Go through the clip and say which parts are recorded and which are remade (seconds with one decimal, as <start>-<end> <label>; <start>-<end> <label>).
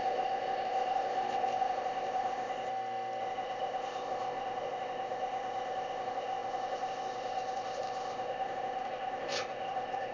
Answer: 0.0-2.7 remade; 2.7-3.2 recorded; 3.2-10.1 remade